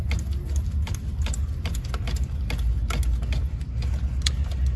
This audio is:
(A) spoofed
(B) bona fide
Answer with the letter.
B